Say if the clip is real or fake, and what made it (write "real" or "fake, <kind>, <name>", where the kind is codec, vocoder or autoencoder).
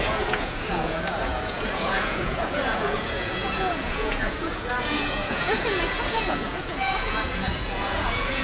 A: fake, vocoder, Vocos